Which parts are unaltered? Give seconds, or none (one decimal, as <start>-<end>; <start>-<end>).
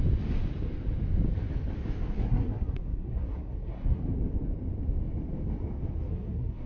0.0-2.1; 4.0-6.1